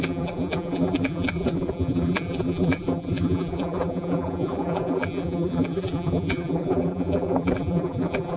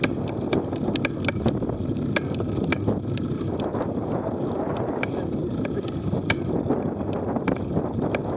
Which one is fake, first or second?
first